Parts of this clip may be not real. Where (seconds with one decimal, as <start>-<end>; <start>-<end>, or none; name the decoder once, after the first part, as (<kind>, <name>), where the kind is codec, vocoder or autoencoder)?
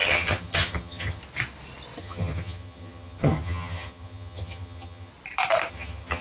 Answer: 0.0-1.2 (vocoder, HiFi-GAN); 2.0-5.1; 5.7-6.2